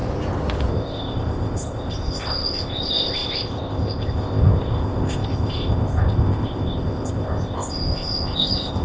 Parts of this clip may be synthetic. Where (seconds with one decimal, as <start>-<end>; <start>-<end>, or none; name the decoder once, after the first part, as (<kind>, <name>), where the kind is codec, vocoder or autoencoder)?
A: 0.7-8.8 (codec, ZipCodec)

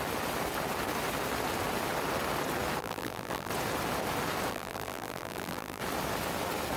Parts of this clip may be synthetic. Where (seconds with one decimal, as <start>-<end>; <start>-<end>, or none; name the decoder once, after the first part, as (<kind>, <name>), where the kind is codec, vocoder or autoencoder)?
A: 2.8-3.5 (vocoder, BigVGAN v2); 4.5-5.8

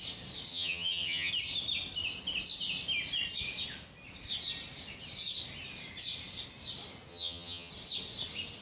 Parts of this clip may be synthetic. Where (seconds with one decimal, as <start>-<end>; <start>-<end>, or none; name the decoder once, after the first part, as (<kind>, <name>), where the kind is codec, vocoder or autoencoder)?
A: 0.5-1.3 (vocoder, HiFi-GAN); 7.1-7.7